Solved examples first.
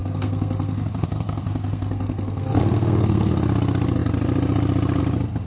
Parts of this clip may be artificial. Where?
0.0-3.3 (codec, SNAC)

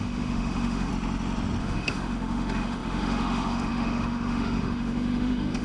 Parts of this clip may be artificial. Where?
0.0-0.9 (autoencoder, DAC-VAE); 1.6-5.6